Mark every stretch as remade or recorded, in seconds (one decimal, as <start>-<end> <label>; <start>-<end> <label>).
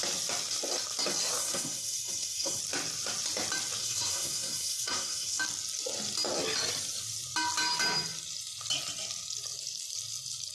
0.0-1.4 recorded; 1.4-2.6 remade; 2.6-3.8 recorded; 3.8-5.4 remade; 5.4-10.5 recorded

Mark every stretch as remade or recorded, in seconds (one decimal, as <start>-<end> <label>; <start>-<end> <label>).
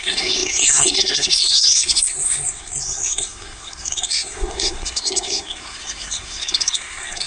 0.0-7.3 remade